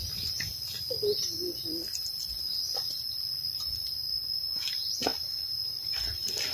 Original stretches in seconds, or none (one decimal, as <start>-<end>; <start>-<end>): 0.0-6.5